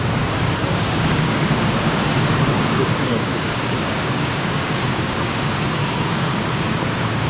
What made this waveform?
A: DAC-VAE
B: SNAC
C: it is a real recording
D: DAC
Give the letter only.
D